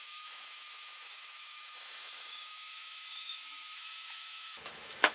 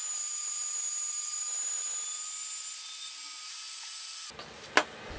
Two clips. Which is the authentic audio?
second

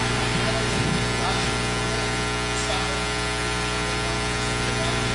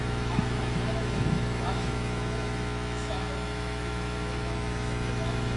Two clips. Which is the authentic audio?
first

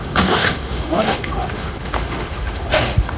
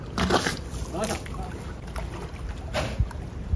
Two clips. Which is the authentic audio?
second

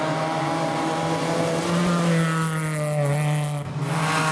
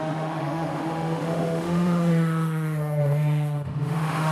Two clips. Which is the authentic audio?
first